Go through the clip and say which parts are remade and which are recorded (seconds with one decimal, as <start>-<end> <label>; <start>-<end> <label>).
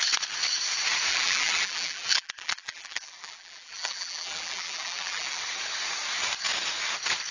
0.0-1.1 recorded; 1.1-5.4 remade; 5.4-7.3 recorded